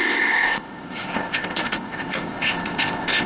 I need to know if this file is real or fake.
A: fake